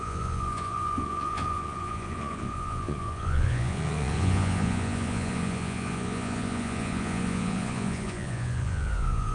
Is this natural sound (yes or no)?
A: no